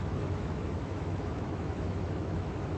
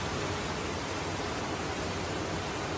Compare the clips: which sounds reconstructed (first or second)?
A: first